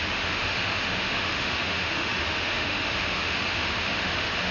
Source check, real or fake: fake